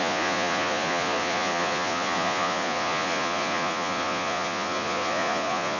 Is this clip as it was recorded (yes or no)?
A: no